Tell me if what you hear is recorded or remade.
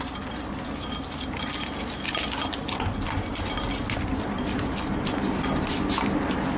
recorded